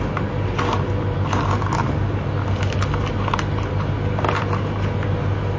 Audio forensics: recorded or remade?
recorded